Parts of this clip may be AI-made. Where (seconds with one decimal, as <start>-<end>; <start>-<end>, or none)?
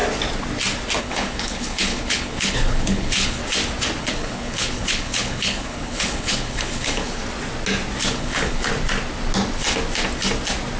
1.0-3.4; 4.0-7.2; 8.1-8.7